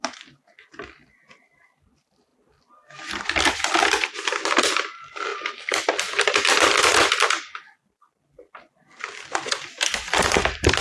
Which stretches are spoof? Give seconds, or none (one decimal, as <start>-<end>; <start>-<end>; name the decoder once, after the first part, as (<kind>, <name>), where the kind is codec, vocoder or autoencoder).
0.0-10.8 (vocoder, BigVGAN v2)